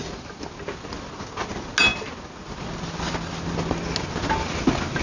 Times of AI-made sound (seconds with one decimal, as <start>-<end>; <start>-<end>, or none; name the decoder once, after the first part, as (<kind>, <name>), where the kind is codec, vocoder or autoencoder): none